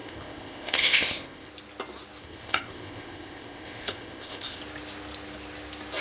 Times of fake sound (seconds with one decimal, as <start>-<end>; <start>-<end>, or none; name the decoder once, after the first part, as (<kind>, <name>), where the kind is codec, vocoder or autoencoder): 0.0-1.5 (codec, ZipCodec); 2.2-4.6